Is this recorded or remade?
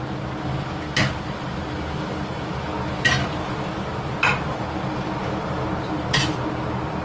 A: recorded